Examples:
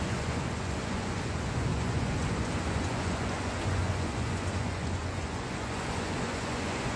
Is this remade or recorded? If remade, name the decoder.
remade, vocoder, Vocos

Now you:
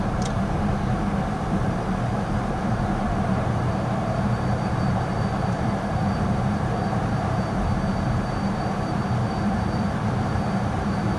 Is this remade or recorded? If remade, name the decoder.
remade, vocoder, BigVGAN v2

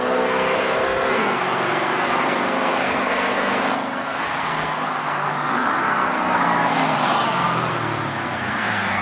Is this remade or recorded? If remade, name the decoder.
remade, codec, SNAC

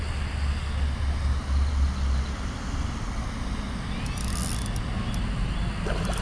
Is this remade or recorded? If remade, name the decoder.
recorded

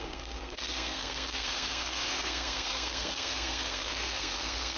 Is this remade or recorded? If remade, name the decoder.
remade, codec, SNAC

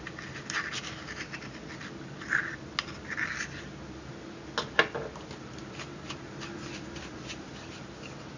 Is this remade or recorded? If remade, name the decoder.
recorded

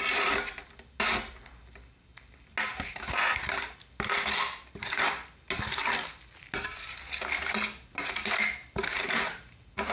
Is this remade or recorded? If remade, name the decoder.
recorded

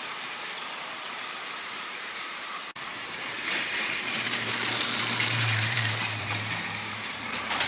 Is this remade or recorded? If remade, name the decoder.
remade, vocoder, BigVGAN v2